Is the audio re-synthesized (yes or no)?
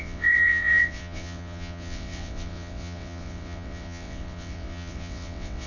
yes